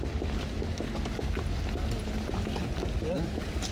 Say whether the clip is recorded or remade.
recorded